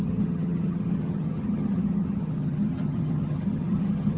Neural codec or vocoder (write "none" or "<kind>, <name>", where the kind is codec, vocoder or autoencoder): vocoder, HiFi-GAN